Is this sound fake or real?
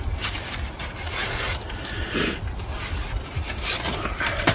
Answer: real